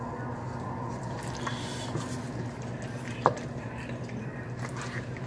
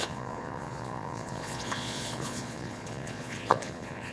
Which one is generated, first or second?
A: second